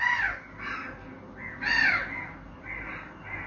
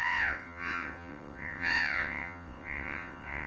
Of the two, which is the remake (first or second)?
second